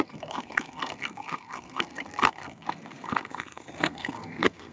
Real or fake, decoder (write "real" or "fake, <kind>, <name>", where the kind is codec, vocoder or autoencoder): fake, codec, SNAC